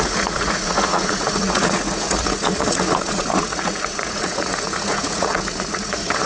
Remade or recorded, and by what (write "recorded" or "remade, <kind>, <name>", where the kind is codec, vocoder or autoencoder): remade, vocoder, Vocos